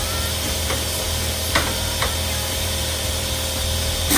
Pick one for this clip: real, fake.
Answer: fake